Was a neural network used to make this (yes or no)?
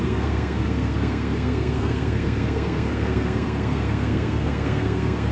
yes